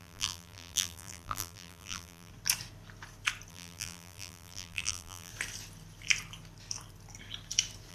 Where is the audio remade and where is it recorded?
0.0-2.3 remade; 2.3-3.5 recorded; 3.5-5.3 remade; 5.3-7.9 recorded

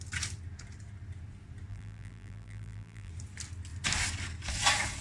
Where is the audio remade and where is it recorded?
0.0-1.7 recorded; 1.7-3.1 remade; 3.1-5.0 recorded

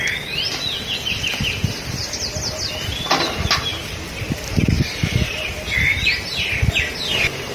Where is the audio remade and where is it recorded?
0.0-7.5 recorded

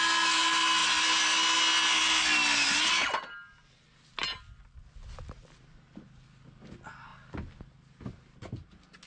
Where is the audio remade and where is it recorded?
0.0-9.1 recorded